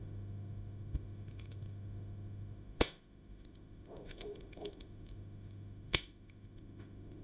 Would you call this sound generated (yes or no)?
yes